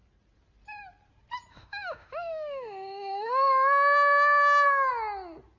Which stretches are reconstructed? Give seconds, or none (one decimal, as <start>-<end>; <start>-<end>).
1.5-4.9